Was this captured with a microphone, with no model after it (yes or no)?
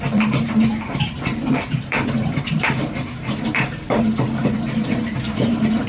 no